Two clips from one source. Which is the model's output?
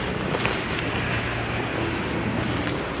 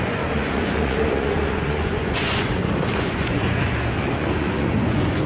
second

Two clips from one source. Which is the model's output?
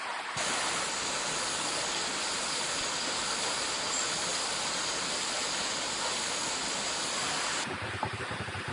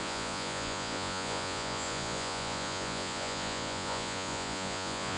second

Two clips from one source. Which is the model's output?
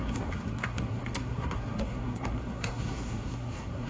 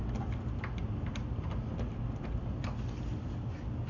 first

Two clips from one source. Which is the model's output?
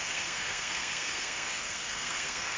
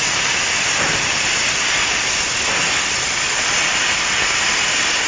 first